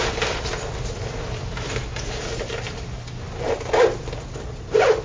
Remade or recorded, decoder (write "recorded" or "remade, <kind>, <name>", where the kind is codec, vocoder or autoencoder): recorded